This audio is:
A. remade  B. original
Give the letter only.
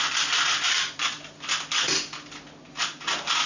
B